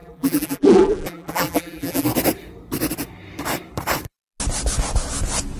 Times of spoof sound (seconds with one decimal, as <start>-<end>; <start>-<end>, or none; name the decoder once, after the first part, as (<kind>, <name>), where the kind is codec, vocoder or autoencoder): 0.0-2.1 (vocoder, BigVGAN v2)